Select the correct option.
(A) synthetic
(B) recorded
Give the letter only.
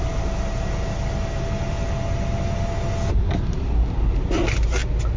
B